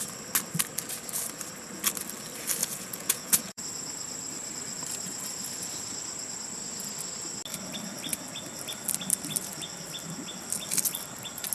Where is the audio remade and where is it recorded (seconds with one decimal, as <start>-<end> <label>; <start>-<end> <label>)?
0.0-2.6 recorded; 2.6-3.6 remade; 3.6-11.5 recorded